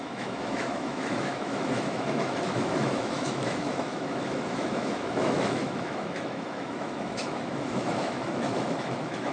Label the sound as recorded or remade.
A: remade